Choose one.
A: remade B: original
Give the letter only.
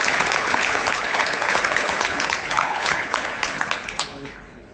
A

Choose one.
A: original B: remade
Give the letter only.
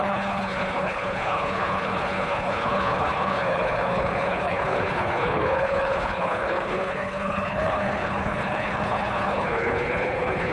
B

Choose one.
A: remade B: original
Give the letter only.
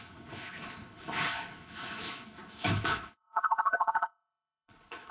A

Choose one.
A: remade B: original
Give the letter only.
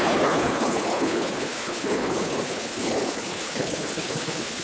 A